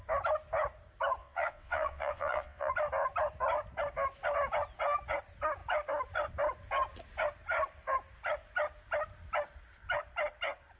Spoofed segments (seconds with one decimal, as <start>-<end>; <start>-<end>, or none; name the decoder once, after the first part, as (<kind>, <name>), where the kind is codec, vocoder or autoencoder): 1.2-2.7 (vocoder, WaveNeXt)